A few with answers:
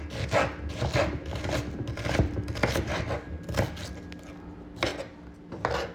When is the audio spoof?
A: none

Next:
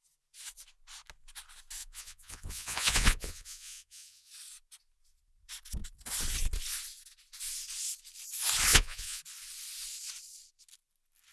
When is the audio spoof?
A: 1.8-4.3; 8.7-9.2

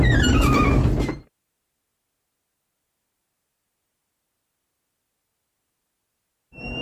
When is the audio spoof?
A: none

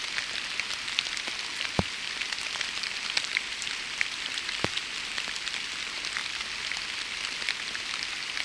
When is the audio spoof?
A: 2.6-6.2

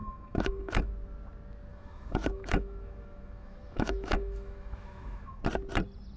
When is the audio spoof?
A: 0.0-0.9; 1.7-5.4

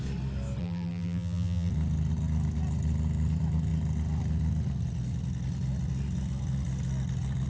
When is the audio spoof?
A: 0.6-1.7

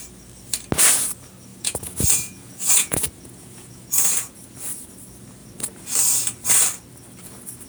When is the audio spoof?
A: 1.5-4.3

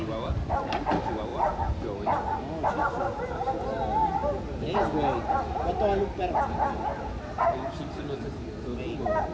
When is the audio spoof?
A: none